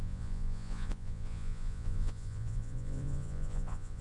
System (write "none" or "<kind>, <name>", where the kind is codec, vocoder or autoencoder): vocoder, Vocos